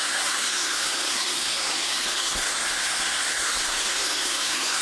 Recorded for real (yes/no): no